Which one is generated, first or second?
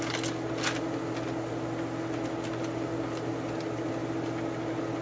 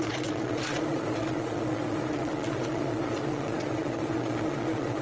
second